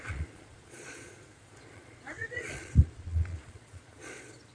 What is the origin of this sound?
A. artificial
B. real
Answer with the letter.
A